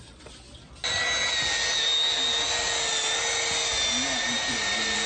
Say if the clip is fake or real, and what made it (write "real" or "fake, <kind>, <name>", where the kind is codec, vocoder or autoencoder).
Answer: real